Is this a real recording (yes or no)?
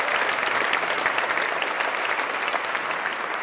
yes